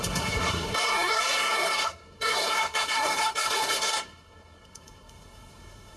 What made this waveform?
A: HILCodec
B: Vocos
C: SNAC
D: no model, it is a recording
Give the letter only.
C